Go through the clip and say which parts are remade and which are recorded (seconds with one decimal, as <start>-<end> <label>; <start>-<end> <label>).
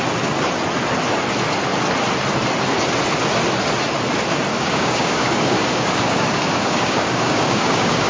0.0-4.5 recorded; 4.5-8.1 remade